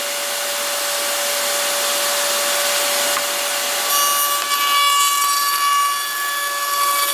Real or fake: real